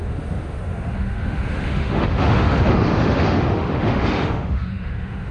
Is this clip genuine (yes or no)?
no